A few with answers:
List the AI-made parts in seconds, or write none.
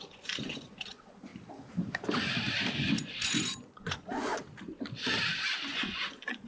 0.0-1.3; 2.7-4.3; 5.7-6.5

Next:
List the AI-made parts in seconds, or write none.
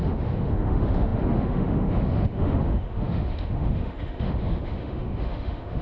0.0-5.8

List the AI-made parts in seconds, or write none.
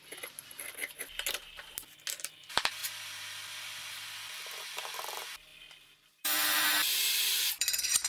0.0-0.8; 2.2-2.8; 4.6-8.1